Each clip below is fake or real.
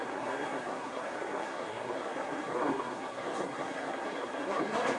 fake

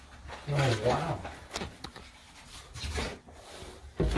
real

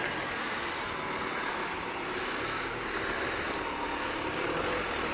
real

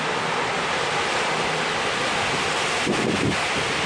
real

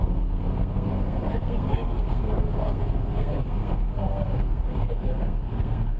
fake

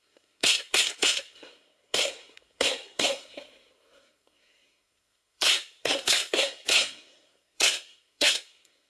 fake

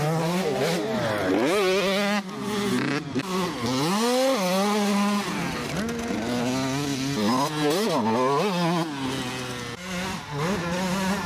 real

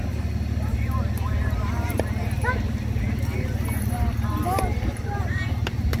real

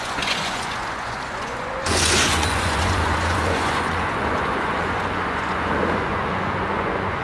fake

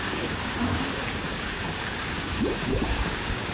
fake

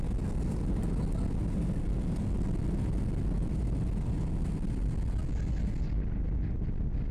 real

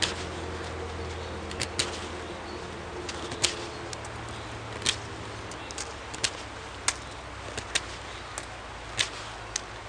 real